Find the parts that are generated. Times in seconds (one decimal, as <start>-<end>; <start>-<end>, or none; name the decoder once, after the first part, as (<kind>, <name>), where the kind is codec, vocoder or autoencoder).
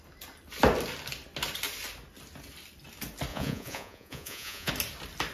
3.3-4.7 (vocoder, Vocos)